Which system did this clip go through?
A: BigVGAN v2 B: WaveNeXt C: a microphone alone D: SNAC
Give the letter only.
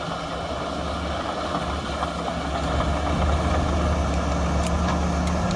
C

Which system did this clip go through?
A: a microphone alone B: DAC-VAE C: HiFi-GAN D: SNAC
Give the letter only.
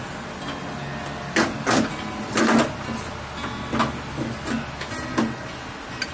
A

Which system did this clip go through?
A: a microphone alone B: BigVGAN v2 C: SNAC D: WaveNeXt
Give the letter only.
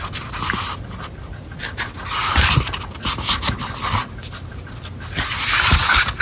A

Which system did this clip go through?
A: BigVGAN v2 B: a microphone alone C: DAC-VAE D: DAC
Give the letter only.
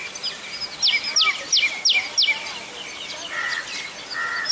B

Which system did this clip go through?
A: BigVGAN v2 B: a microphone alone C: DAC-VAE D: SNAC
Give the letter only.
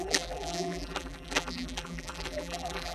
A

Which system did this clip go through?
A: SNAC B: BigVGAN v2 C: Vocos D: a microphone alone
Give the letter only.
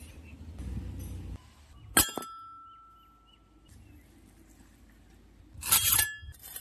D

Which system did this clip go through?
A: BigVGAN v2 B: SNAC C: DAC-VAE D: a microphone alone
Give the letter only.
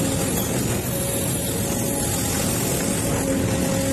D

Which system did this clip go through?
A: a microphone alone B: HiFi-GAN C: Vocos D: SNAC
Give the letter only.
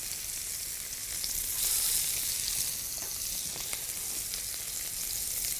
A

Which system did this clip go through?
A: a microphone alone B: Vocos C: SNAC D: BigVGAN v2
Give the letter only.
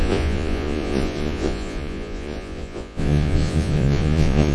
B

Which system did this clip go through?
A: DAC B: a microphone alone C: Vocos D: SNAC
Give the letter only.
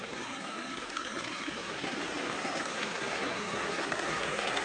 D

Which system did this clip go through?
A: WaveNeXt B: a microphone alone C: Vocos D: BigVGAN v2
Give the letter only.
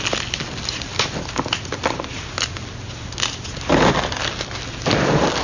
B